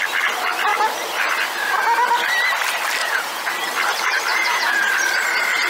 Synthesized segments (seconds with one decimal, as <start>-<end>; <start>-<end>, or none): 3.0-3.5; 4.3-4.9